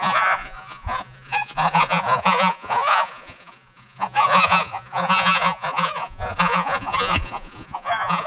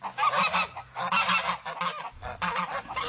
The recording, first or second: second